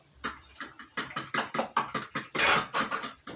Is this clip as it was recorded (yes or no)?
yes